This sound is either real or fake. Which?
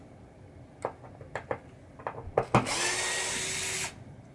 real